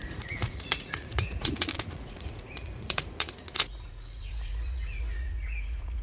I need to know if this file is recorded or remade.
remade